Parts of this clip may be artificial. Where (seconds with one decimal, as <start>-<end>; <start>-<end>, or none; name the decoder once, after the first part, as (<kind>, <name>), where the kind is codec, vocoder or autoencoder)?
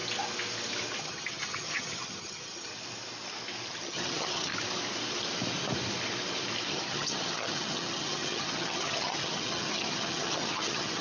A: 1.0-2.7 (vocoder, HiFi-GAN); 3.7-4.5; 6.7-11.0